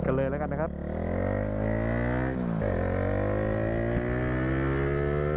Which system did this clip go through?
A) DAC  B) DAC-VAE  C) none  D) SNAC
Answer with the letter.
C